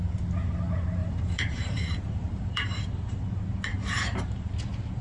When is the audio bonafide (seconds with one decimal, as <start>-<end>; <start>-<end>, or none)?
0.0-1.0; 3.2-3.7; 4.5-5.0